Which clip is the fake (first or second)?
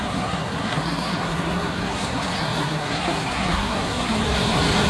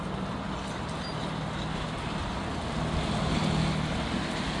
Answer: first